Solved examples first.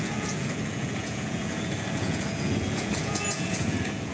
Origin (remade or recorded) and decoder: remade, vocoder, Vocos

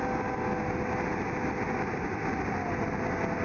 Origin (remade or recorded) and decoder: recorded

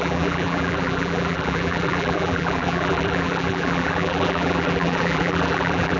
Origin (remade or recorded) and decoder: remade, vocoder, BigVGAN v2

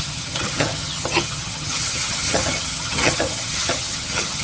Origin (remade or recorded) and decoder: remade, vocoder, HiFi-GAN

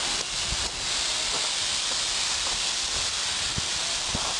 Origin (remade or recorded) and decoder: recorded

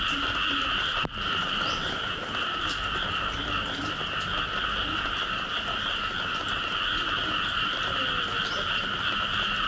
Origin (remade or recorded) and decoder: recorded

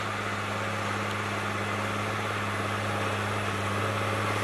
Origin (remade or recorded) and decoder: recorded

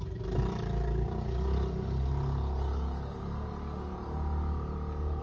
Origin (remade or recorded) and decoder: recorded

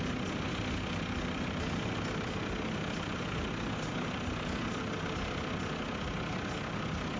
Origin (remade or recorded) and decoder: recorded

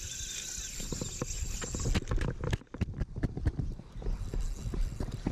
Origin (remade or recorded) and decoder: recorded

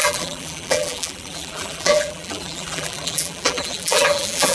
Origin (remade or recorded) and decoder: remade, vocoder, BigVGAN v2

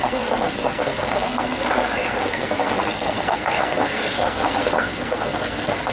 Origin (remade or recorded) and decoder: remade, codec, SNAC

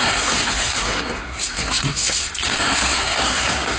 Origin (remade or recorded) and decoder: remade, codec, SNAC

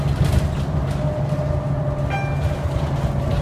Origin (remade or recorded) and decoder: recorded